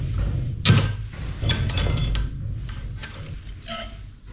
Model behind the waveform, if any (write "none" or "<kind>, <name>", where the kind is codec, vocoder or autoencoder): none